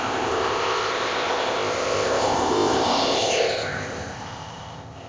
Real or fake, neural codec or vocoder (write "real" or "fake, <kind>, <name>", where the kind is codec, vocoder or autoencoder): fake, codec, ZipCodec